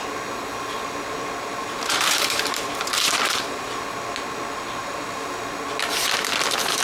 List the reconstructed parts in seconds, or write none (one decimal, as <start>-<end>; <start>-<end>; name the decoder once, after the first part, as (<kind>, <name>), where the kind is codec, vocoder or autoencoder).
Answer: 1.6-3.8 (vocoder, BigVGAN v2); 4.8-5.4